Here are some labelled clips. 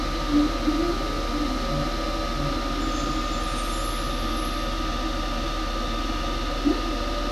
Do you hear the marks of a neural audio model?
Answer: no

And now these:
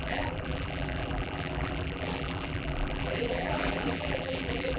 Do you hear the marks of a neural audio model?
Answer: yes